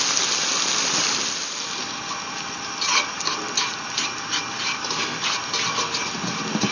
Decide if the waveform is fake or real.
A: real